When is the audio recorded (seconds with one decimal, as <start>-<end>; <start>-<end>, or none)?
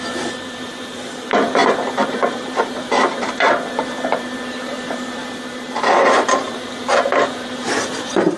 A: none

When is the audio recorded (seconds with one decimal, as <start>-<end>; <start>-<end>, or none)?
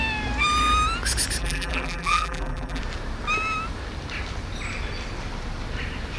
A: 0.0-1.4; 2.8-6.2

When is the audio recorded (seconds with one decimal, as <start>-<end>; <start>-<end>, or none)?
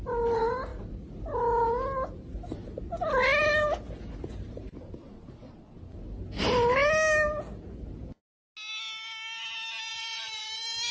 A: 0.0-0.7; 1.2-9.9; 10.4-10.9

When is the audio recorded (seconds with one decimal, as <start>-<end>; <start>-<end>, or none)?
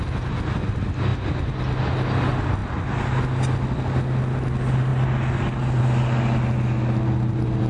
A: 0.0-7.7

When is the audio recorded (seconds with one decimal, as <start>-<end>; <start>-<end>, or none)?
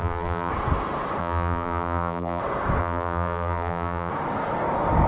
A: 0.5-1.2; 2.4-2.8; 4.1-5.1